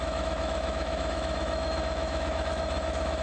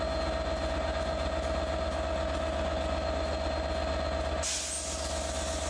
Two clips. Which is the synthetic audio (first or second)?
first